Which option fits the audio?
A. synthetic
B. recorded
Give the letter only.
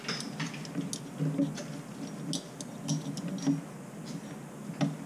B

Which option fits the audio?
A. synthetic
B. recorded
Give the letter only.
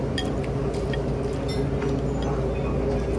B